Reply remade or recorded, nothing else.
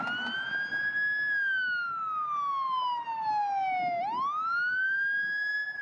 recorded